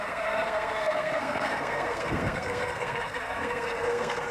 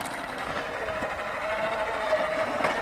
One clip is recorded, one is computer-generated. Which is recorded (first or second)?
second